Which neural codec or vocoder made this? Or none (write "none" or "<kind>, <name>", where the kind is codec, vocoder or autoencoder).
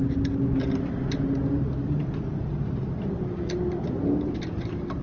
none